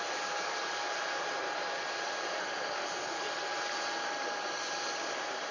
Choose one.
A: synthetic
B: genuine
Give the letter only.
B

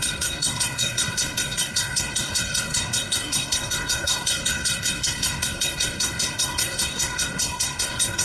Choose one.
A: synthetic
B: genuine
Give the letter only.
A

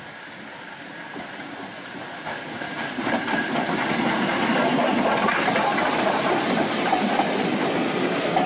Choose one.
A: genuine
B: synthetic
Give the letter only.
A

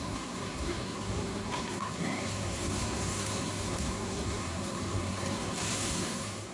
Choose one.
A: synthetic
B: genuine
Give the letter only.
A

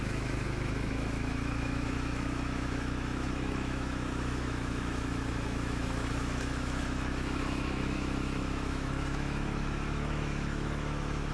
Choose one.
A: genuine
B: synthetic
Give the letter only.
B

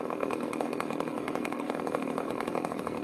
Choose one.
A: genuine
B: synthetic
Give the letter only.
B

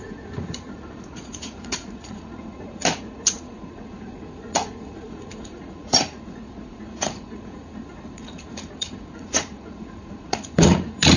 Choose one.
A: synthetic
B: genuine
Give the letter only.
A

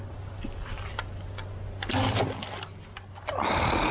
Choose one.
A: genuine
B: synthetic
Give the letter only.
A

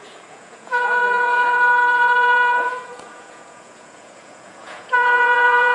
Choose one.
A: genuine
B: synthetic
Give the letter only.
B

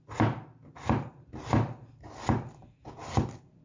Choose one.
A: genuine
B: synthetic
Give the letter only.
A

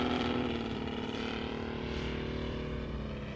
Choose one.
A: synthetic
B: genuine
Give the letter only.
A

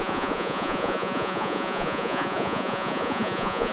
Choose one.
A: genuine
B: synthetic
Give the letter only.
B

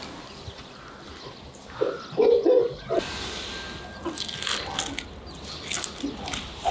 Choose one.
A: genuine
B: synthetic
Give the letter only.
A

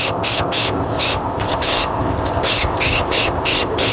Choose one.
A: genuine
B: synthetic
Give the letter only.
B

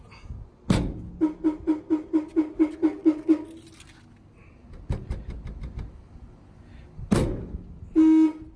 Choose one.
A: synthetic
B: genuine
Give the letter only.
B